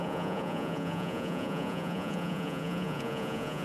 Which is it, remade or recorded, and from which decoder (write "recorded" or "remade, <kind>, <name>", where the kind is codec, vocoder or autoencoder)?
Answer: remade, vocoder, Vocos